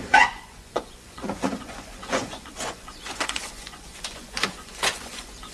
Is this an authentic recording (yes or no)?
no